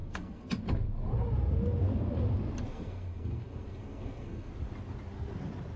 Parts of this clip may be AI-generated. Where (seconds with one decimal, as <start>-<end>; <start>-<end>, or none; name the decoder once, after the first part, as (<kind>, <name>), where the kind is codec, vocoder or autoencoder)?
0.0-0.5 (codec, SNAC); 2.7-4.5